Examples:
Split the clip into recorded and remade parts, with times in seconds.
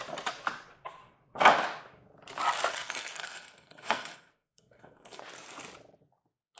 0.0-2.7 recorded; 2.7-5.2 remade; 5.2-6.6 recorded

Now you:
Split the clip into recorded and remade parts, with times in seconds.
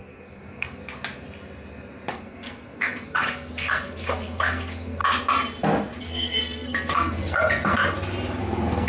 0.0-0.8 remade; 0.8-2.1 recorded; 2.1-5.0 remade; 5.0-6.0 recorded; 6.0-7.8 remade; 7.8-8.4 recorded; 8.4-8.9 remade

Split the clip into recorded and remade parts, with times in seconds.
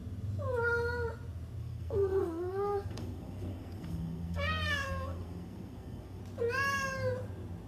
0.0-1.6 recorded; 1.6-6.2 remade; 6.2-7.7 recorded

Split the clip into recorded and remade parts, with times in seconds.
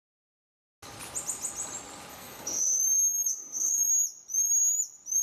0.0-2.1 recorded; 2.1-2.8 remade; 2.8-3.3 recorded; 3.3-3.8 remade; 3.8-5.2 recorded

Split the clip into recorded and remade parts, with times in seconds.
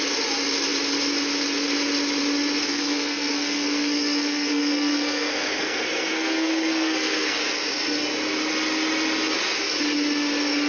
0.0-2.6 recorded; 2.6-7.4 remade; 7.4-10.7 recorded